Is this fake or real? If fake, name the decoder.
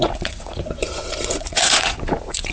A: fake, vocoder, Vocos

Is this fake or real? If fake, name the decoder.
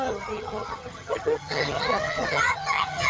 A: fake, vocoder, HiFi-GAN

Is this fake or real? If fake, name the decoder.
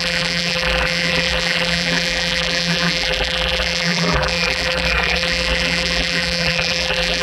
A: fake, vocoder, BigVGAN v2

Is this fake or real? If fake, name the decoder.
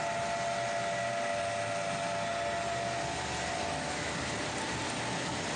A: real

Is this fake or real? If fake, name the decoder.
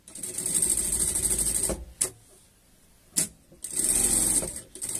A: real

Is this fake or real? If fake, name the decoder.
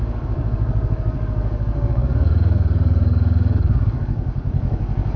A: fake, codec, DAC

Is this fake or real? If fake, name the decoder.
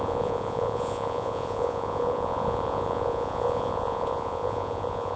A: fake, vocoder, Vocos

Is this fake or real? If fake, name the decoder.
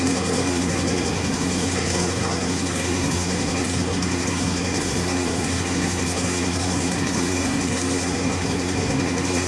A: fake, codec, SNAC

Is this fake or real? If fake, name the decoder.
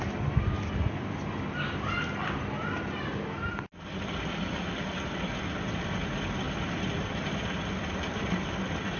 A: real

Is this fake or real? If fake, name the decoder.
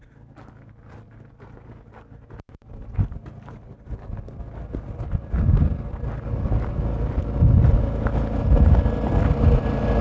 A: real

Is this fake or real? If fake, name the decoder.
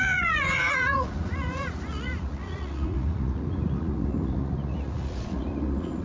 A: fake, vocoder, Vocos